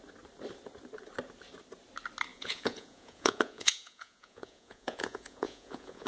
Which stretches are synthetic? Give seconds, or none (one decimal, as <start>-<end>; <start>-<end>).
2.3-6.1